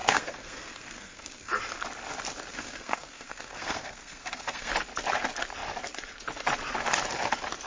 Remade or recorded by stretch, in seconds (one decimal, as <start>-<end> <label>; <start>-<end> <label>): 0.0-1.6 remade; 1.6-2.5 recorded; 2.5-4.7 remade; 4.7-7.7 recorded